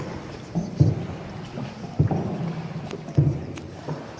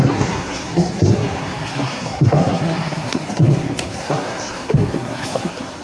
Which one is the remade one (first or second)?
second